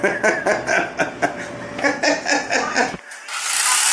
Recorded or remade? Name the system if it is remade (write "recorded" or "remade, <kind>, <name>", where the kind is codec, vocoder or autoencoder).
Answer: recorded